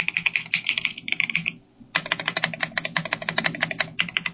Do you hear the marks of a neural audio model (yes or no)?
no